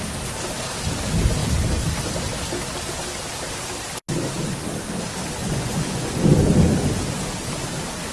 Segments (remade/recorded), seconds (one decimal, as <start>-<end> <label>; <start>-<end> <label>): 0.0-5.4 recorded; 5.4-6.2 remade; 6.2-8.1 recorded